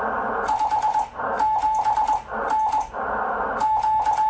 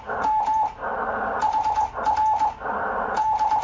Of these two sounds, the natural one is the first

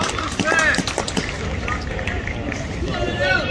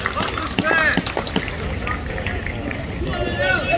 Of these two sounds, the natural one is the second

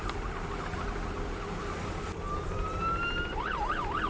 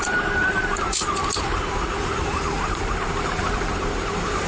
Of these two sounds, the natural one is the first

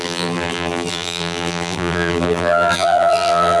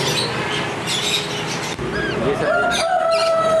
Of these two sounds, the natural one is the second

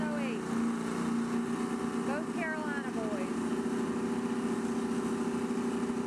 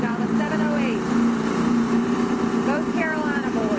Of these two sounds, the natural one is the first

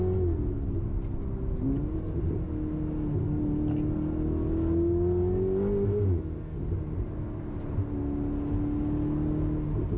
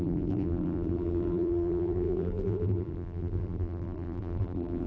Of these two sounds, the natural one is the first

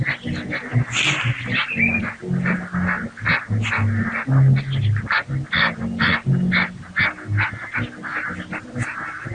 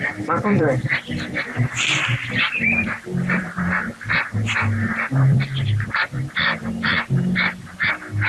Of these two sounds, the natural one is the first